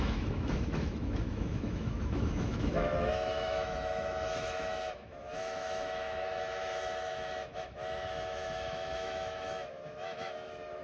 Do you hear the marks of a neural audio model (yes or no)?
yes